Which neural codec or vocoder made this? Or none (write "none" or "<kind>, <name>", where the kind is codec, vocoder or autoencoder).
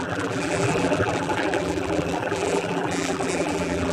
vocoder, BigVGAN v2